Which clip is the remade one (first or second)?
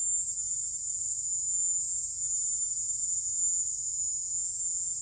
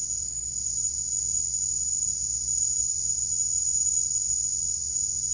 second